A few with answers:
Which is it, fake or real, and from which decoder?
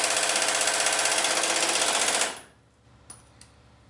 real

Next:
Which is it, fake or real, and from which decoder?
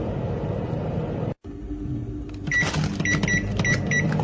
real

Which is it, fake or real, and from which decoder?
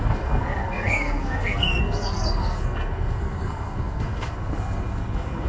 fake, codec, SNAC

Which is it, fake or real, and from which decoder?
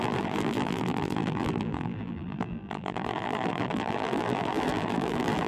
fake, vocoder, BigVGAN v2